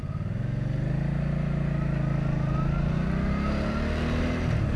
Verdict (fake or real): real